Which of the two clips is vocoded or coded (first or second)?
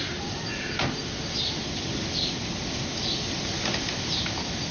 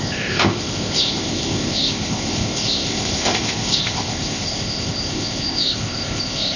second